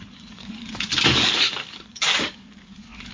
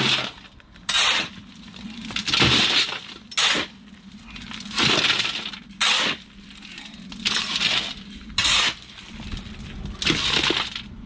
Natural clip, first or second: second